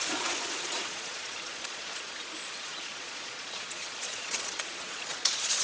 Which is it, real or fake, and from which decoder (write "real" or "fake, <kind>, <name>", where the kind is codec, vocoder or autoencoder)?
fake, vocoder, Vocos